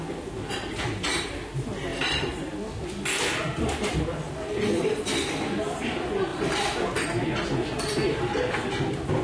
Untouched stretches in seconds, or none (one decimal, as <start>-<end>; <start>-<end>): 0.0-1.9; 4.0-6.3; 7.1-9.2